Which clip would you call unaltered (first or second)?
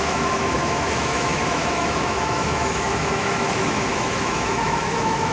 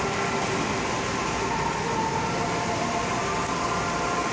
second